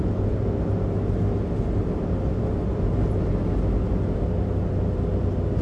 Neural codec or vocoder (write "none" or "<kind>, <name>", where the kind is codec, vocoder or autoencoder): none